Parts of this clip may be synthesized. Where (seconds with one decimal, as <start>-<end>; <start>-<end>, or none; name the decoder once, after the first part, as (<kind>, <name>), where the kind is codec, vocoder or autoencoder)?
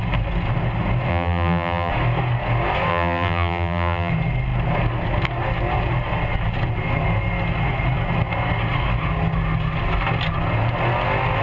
1.1-1.9 (vocoder, BigVGAN v2); 2.9-4.1